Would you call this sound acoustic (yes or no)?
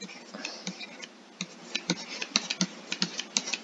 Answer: yes